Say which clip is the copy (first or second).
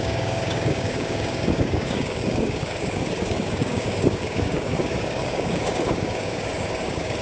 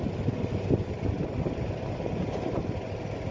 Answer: first